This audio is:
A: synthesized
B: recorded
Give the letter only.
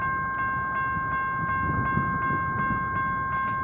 B